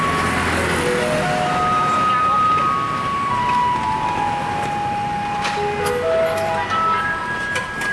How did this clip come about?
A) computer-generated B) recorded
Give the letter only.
B